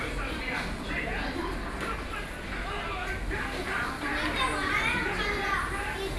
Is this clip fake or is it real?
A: real